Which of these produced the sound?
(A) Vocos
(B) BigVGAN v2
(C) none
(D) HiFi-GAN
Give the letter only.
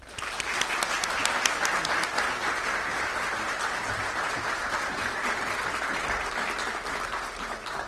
C